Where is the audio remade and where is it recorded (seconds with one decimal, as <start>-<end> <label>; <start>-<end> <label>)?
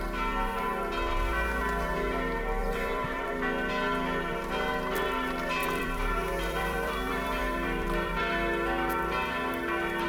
0.0-2.6 recorded; 2.6-3.3 remade; 3.3-5.6 recorded; 5.6-8.2 remade; 8.2-10.1 recorded